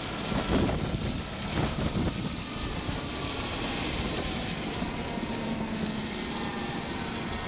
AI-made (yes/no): no